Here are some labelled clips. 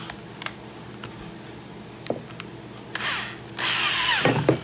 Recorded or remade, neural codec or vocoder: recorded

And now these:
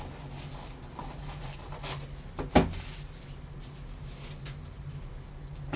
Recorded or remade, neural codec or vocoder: recorded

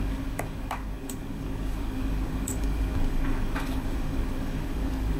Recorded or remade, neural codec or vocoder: remade, codec, DAC